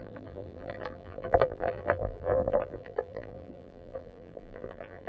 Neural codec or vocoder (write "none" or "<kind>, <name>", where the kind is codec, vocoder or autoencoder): vocoder, BigVGAN v2